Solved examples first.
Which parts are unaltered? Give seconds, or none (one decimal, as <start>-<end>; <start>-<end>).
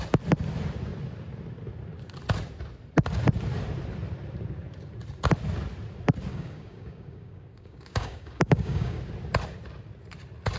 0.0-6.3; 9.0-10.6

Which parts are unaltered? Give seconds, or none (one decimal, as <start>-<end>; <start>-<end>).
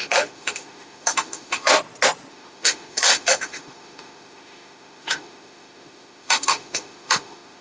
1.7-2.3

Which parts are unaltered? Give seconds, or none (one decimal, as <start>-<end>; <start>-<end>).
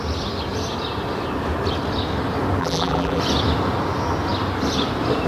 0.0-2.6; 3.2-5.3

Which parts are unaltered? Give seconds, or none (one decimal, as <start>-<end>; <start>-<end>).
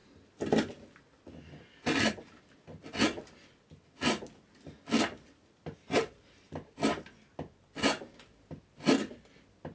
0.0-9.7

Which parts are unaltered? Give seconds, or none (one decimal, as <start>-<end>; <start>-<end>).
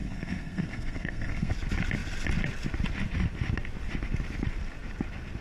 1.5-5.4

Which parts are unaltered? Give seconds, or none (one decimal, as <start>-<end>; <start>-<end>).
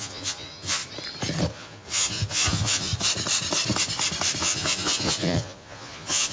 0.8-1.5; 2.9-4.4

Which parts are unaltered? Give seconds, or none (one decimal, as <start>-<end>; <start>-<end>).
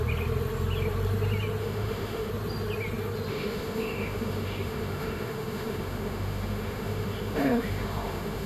0.0-1.6; 2.3-3.3